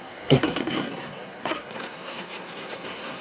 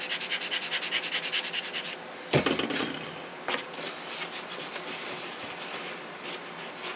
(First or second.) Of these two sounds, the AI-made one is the first